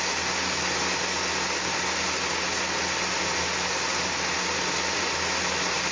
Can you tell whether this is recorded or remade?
recorded